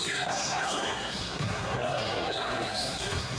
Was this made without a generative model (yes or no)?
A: no